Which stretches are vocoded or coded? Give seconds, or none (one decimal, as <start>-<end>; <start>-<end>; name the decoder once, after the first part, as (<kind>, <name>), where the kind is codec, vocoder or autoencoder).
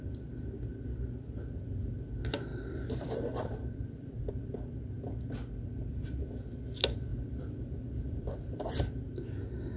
2.5-4.3 (vocoder, BigVGAN v2); 7.1-8.8